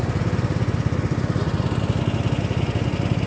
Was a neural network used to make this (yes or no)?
no